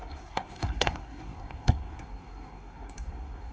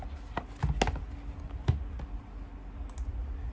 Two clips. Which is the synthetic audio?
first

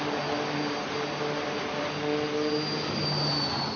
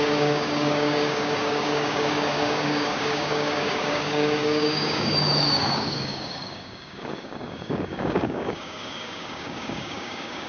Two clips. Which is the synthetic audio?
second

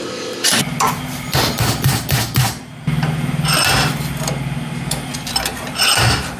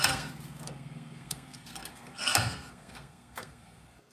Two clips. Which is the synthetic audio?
second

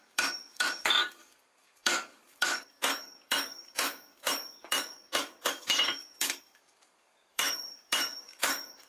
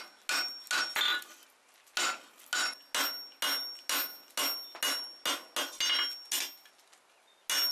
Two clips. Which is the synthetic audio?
first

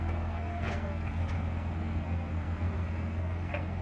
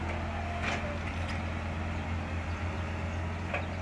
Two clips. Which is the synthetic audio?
first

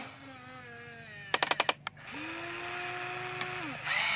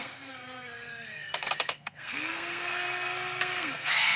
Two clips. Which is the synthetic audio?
second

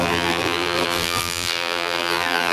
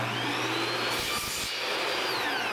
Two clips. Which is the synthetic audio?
first